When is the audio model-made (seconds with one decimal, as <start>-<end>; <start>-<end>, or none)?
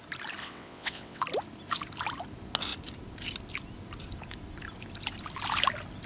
0.4-1.2